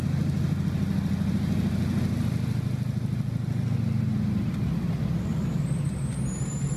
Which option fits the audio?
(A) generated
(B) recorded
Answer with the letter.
B